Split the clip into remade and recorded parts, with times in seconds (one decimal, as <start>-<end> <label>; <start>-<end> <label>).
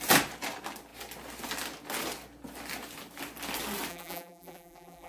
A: 0.0-3.9 recorded; 3.9-5.1 remade